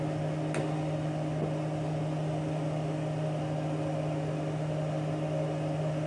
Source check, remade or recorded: recorded